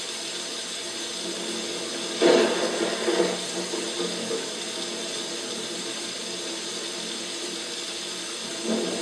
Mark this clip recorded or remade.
recorded